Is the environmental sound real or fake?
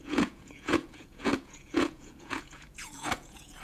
fake